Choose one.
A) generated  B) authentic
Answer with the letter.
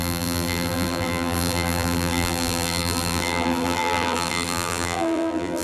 A